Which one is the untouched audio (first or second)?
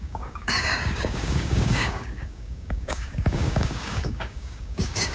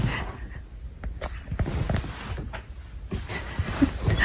second